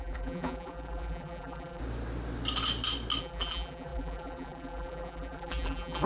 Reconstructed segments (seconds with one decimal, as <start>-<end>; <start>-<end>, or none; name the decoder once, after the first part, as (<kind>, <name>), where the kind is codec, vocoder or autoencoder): 0.0-1.8 (vocoder, BigVGAN v2); 3.2-6.1